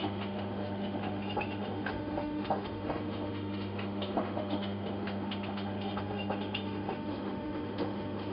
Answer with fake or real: fake